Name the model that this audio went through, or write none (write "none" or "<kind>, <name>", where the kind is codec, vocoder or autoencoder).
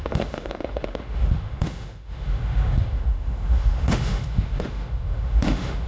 autoencoder, DAC-VAE